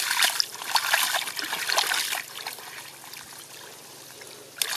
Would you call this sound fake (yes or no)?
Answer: no